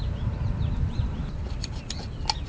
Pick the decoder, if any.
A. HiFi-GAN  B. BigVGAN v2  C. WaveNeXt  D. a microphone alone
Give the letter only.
D